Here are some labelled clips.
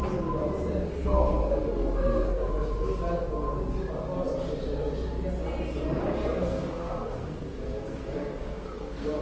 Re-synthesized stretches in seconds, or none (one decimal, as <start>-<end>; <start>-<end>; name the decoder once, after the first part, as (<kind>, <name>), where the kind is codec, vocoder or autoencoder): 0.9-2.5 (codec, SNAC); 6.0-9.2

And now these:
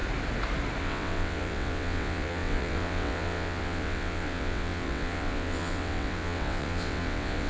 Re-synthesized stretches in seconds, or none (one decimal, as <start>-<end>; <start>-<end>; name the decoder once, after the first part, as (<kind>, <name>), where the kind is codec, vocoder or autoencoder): 0.8-7.5 (vocoder, WaveNeXt)

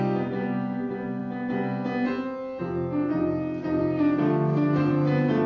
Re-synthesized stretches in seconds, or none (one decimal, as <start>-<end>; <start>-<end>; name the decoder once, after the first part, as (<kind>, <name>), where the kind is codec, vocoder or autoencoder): 3.8-4.9 (codec, DAC)

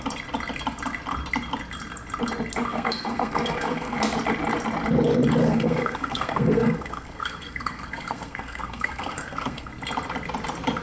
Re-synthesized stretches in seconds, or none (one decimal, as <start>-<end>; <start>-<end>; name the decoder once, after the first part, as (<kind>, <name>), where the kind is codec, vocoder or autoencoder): 2.7-4.0 (codec, SNAC); 5.4-9.7

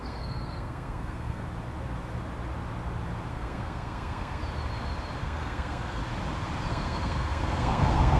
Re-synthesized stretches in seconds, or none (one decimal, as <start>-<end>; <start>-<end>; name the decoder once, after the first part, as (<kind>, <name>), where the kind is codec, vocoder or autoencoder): 0.0-1.4 (codec, SNAC); 3.3-4.4; 5.2-6.0; 6.7-8.2

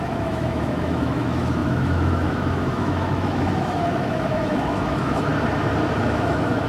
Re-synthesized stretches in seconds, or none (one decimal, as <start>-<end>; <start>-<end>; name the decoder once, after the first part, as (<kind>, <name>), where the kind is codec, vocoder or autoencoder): 0.0-5.3 (autoencoder, DAC-VAE); 6.0-6.7

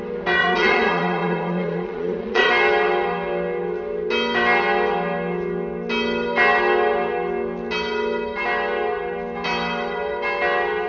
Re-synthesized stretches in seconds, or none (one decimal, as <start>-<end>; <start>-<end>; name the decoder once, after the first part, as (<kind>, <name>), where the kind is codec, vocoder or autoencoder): 0.4-2.5 (vocoder, Vocos)